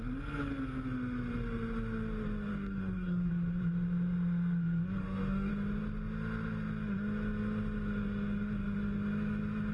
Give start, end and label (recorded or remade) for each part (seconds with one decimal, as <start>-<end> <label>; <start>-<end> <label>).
0.0-2.5 recorded; 2.5-3.3 remade; 3.3-5.0 recorded; 5.0-5.5 remade; 5.5-9.7 recorded